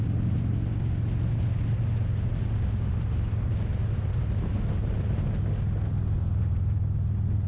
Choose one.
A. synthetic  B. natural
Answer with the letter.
B